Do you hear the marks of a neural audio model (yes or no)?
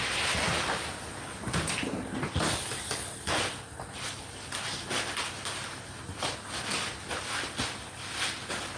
no